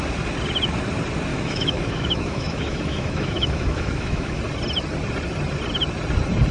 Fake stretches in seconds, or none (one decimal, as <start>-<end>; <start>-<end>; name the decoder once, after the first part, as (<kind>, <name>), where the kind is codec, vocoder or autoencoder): 1.3-4.4 (autoencoder, DAC-VAE)